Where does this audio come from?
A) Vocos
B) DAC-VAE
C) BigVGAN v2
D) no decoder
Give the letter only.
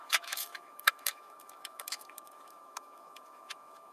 B